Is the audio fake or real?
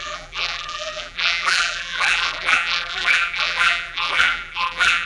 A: fake